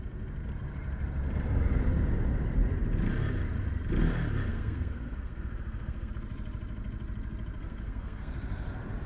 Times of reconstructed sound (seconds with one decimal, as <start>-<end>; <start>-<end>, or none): 4.5-6.1; 7.6-8.3